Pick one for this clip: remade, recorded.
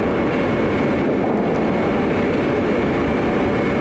recorded